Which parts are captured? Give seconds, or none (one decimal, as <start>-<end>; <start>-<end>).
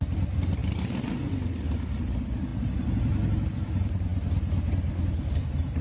0.0-5.8